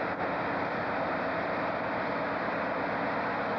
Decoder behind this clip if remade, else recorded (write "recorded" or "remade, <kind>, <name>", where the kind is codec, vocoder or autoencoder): recorded